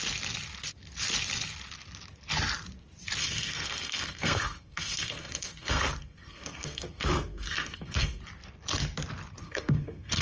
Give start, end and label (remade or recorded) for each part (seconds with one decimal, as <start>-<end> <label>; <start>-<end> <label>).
0.0-3.2 recorded; 3.2-8.2 remade; 8.2-9.4 recorded; 9.4-10.2 remade